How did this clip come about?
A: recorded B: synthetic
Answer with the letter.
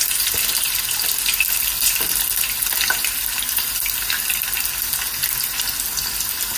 A